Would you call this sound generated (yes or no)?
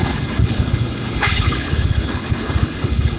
yes